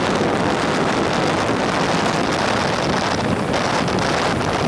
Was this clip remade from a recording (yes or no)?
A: no